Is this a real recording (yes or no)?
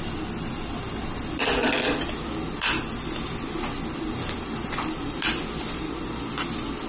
yes